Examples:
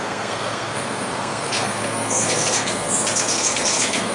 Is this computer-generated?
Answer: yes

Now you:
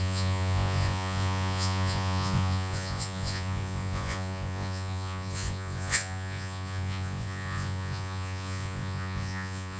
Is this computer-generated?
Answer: yes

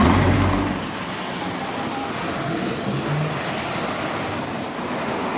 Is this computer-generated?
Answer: no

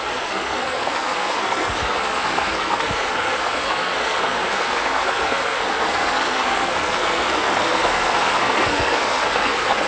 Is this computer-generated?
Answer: yes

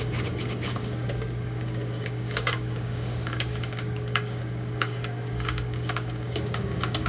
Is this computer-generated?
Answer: yes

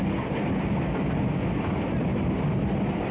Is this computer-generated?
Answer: no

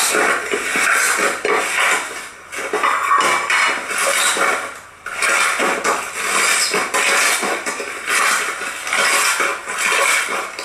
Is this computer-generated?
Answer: no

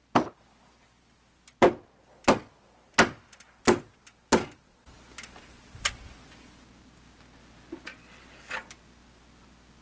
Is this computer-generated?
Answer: no